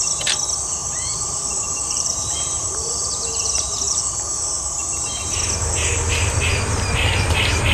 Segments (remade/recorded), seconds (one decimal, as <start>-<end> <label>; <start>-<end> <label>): 0.0-0.8 recorded; 0.8-4.0 remade; 4.0-7.7 recorded